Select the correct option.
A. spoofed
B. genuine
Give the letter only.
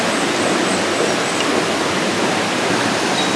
B